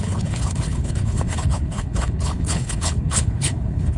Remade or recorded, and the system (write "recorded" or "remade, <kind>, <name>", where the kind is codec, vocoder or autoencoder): remade, codec, HILCodec